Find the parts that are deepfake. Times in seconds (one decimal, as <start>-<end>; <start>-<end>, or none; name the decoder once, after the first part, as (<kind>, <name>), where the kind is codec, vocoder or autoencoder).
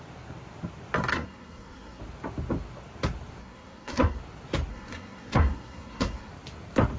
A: 1.1-2.0 (codec, SNAC); 3.4-4.2; 4.7-6.3